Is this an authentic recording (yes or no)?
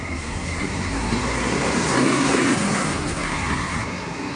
no